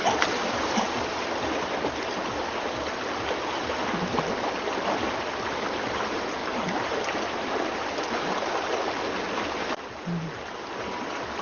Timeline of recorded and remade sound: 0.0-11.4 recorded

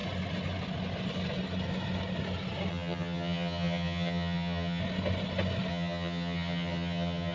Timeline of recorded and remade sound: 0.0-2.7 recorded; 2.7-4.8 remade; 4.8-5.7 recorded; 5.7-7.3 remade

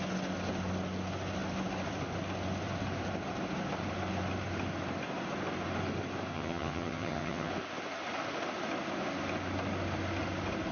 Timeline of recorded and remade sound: 0.0-6.3 recorded; 6.3-7.5 remade; 7.5-10.7 recorded

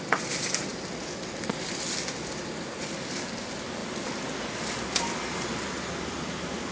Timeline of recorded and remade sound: 0.0-6.7 recorded

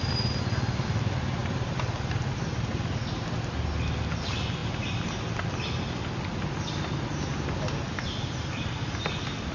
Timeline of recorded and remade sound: 0.0-9.5 recorded

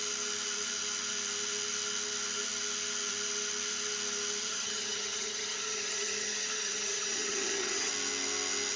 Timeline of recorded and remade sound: 0.0-4.4 recorded; 4.4-7.9 remade; 7.9-8.8 recorded

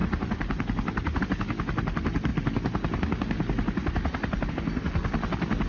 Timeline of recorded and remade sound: 0.0-5.7 recorded

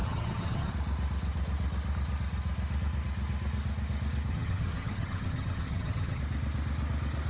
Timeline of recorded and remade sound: 0.0-0.7 remade; 0.7-4.3 recorded; 4.3-6.2 remade; 6.2-7.3 recorded